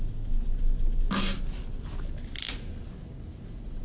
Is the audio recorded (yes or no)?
yes